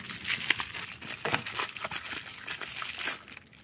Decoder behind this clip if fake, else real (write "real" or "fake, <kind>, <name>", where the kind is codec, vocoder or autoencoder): real